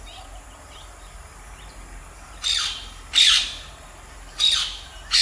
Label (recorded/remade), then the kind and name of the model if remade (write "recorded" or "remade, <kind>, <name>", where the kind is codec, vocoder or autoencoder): remade, vocoder, BigVGAN v2